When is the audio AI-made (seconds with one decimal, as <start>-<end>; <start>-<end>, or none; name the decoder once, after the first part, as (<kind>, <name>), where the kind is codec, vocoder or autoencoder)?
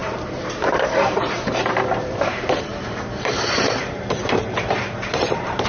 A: 0.0-5.7 (vocoder, BigVGAN v2)